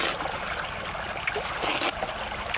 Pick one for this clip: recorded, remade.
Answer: recorded